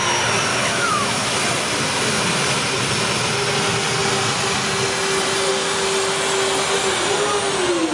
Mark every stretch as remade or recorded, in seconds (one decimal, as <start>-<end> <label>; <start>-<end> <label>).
0.0-0.5 recorded; 0.5-1.3 remade; 1.3-7.9 recorded